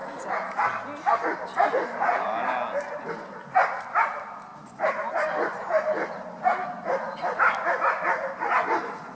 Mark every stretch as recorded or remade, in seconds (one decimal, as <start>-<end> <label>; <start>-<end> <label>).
0.0-9.1 recorded